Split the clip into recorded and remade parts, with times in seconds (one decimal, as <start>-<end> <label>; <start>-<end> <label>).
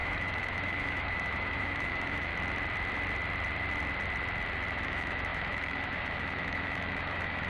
0.0-2.3 remade; 2.3-4.7 recorded; 4.7-7.5 remade